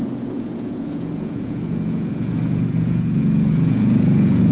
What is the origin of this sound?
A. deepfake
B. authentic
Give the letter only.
A